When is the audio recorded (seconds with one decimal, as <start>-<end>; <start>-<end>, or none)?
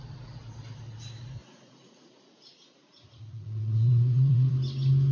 0.0-1.4; 4.5-5.1